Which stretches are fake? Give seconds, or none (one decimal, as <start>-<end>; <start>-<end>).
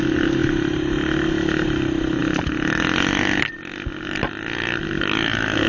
none